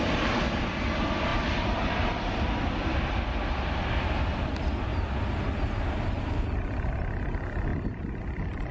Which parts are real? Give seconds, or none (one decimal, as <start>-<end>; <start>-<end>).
0.0-1.3; 2.4-7.7; 8.2-8.7